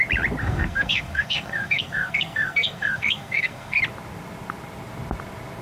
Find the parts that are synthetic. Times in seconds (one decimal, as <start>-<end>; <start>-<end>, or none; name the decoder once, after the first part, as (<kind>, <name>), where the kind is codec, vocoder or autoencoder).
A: 0.4-3.8 (codec, SNAC)

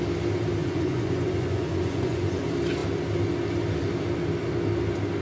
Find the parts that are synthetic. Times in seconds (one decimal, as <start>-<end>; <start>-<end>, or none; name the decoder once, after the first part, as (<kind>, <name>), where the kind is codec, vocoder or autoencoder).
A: 0.6-2.4 (vocoder, Vocos)

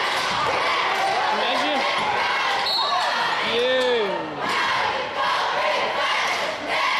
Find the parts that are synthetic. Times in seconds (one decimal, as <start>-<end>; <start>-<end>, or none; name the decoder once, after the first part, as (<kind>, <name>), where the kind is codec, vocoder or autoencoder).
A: none

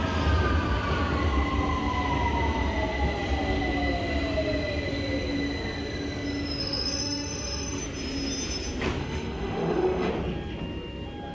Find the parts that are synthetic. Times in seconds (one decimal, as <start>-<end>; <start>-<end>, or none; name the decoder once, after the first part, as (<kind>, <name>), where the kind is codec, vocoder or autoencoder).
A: 6.6-7.8 (autoencoder, DAC-VAE); 9.0-10.1

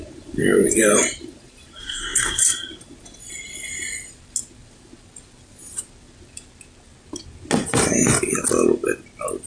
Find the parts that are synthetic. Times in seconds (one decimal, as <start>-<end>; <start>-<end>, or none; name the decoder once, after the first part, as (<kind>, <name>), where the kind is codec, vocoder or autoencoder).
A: 1.8-2.4 (codec, SNAC)

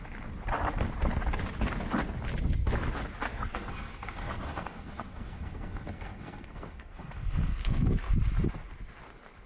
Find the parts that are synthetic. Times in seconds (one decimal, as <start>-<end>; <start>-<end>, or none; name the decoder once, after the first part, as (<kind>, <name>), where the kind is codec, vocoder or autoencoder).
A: 3.3-8.1 (codec, SNAC)

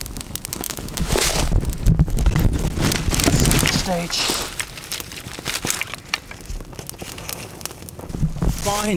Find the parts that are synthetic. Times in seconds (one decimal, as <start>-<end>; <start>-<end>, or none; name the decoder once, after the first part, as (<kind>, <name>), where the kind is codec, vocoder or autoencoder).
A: 0.5-1.1 (autoencoder, DAC-VAE)

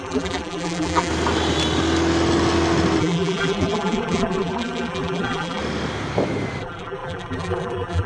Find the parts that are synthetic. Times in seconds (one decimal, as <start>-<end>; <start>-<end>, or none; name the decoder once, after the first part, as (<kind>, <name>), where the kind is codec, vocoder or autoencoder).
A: 0.0-1.1 (vocoder, BigVGAN v2); 3.0-5.6; 6.6-8.1